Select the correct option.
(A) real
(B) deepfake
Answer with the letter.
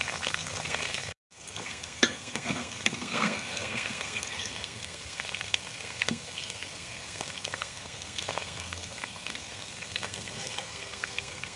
B